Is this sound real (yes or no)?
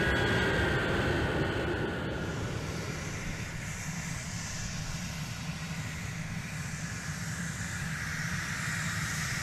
yes